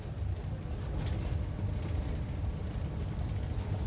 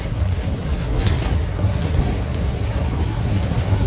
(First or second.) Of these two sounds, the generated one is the second